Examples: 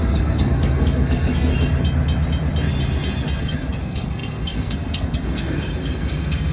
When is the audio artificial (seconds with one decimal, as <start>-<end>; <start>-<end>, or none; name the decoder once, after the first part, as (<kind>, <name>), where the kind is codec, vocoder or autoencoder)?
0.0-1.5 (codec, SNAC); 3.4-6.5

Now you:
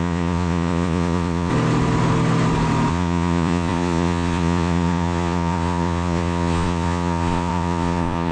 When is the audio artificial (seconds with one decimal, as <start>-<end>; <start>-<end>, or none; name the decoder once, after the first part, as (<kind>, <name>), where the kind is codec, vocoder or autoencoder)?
0.0-1.5 (vocoder, Vocos); 2.9-8.3

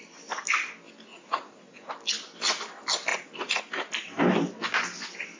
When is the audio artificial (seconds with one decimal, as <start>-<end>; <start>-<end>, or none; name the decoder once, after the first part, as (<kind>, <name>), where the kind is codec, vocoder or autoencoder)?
1.1-1.9 (vocoder, Vocos); 3.1-3.6